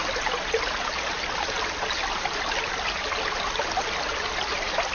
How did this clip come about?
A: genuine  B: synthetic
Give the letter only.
A